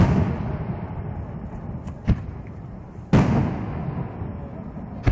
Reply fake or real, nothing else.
real